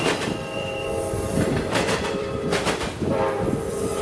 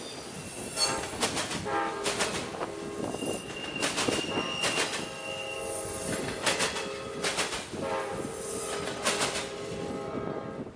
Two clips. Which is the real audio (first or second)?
second